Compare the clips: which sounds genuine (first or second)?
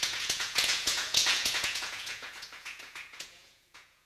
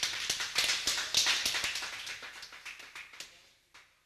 second